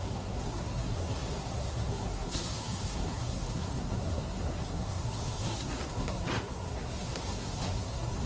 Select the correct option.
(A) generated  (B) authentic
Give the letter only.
A